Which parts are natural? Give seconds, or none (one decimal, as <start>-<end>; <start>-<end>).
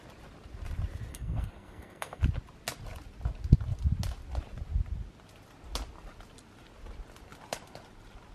0.0-1.1; 2.2-8.3